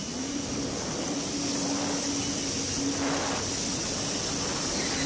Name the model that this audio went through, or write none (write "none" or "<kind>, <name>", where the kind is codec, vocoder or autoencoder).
none